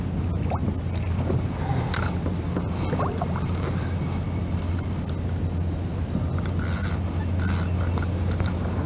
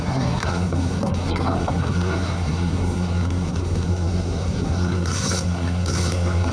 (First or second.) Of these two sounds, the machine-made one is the second